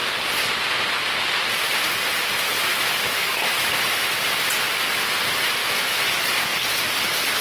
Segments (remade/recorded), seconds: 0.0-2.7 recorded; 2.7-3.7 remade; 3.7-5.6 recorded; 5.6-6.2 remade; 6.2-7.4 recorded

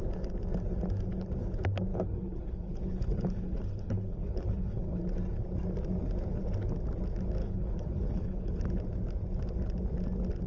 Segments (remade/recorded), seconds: 0.0-1.9 recorded; 1.9-5.0 remade; 5.0-7.4 recorded; 7.4-8.6 remade; 8.6-10.5 recorded